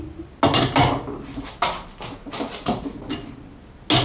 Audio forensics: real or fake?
real